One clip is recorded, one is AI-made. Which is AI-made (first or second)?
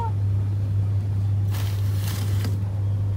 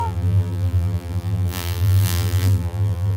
second